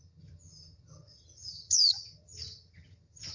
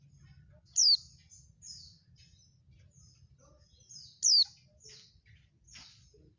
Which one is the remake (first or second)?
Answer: first